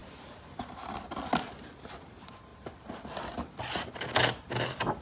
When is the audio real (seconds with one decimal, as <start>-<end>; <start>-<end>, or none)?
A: 0.0-5.0